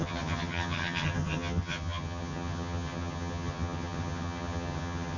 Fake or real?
fake